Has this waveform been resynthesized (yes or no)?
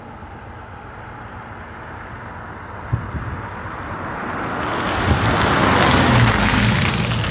no